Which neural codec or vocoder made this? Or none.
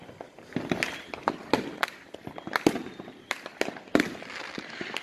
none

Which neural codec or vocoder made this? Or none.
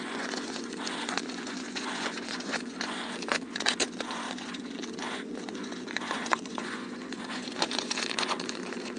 vocoder, Vocos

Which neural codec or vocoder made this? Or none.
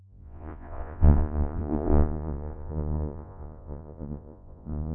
vocoder, Vocos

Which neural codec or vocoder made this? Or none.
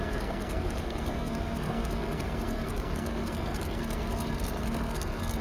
codec, SNAC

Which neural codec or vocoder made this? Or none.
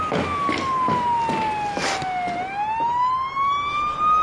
none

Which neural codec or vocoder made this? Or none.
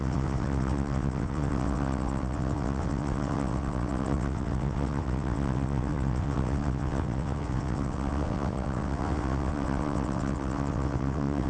vocoder, WaveNeXt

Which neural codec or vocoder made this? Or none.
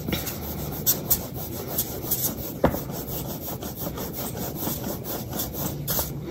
none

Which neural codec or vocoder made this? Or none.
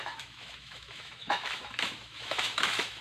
autoencoder, DAC-VAE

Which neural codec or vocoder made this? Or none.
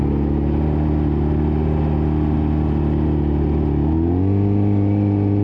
none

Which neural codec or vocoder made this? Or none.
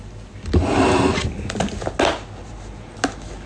none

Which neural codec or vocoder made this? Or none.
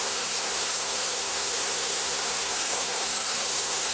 codec, SNAC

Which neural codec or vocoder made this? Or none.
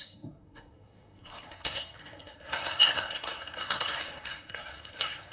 codec, SNAC